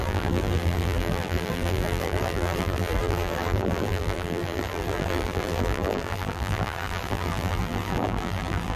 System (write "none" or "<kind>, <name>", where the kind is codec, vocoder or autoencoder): vocoder, BigVGAN v2